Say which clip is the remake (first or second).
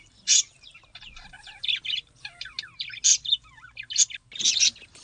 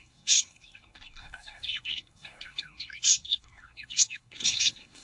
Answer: second